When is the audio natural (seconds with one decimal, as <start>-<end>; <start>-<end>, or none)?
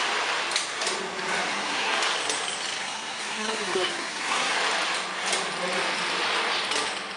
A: 0.0-1.5; 2.0-2.8; 4.6-7.2